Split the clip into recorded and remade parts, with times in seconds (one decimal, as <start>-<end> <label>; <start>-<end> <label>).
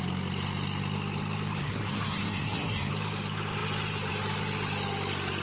0.0-1.6 recorded; 1.6-2.9 remade; 2.9-5.4 recorded